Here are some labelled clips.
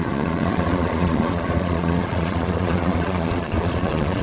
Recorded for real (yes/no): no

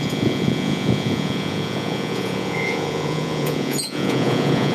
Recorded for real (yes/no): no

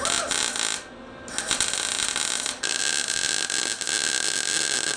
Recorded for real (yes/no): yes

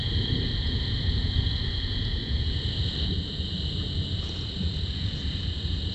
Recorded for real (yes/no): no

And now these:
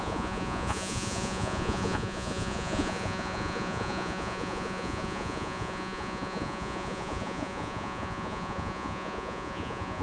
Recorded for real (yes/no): no